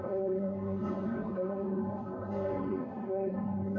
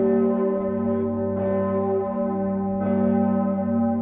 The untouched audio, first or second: second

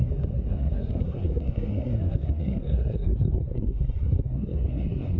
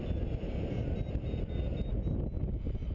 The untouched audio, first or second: second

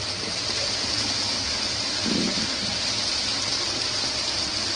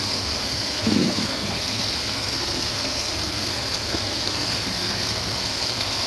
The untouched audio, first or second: first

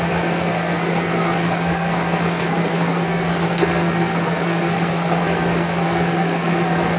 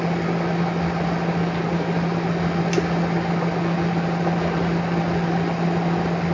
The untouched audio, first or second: second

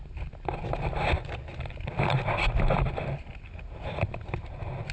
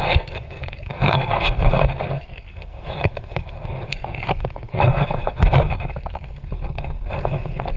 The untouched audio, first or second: first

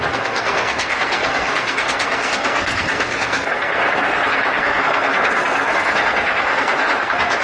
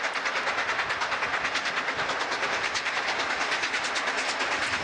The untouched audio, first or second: second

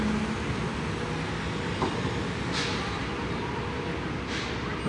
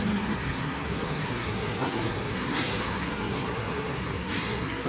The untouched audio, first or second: first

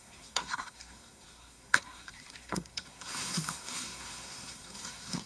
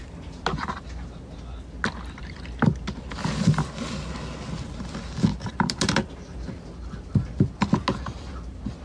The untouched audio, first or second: second